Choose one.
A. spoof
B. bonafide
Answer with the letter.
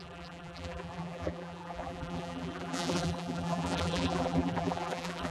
A